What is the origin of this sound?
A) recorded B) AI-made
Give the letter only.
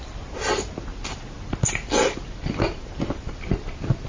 A